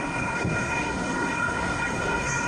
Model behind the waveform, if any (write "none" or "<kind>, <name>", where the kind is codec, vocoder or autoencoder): codec, SNAC